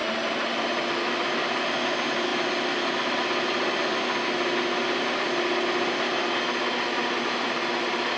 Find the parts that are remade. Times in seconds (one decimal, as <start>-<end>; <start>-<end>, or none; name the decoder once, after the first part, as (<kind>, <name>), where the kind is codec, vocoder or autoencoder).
none